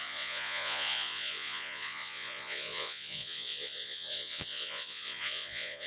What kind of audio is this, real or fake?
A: fake